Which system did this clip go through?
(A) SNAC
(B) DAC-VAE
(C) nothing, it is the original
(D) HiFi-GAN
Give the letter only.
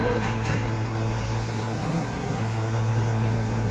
A